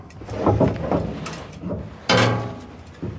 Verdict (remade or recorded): recorded